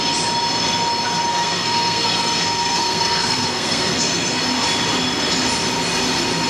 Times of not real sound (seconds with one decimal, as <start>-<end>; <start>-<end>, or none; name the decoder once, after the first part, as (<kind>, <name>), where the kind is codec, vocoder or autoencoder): 1.3-4.4 (codec, SNAC)